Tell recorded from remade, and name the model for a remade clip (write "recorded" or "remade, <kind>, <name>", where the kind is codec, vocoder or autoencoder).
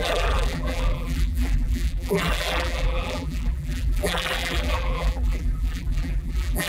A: remade, vocoder, BigVGAN v2